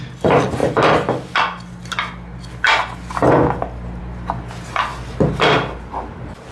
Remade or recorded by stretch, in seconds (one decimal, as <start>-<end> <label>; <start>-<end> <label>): 0.0-6.5 recorded